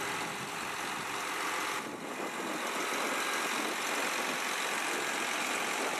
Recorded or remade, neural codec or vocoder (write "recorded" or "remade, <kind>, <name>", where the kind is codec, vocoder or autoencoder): recorded